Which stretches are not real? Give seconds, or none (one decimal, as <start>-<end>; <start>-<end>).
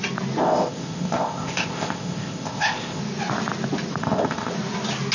0.4-3.0; 4.0-4.5